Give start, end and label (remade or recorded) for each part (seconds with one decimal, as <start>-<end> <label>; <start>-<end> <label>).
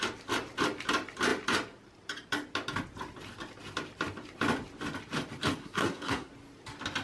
0.0-5.6 recorded; 5.6-6.3 remade; 6.3-7.0 recorded